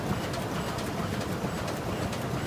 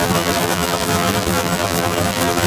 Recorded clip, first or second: first